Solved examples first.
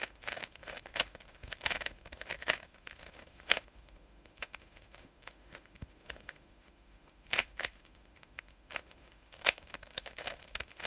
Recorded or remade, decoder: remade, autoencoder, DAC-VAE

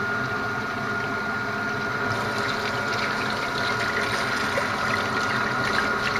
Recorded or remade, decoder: recorded